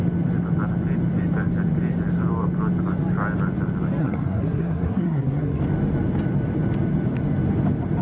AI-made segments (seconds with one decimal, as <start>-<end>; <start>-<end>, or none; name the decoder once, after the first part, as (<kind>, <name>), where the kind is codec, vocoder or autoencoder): 4.0-5.6 (codec, SNAC)